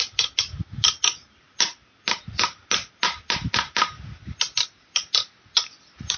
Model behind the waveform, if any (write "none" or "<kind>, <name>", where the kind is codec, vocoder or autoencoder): none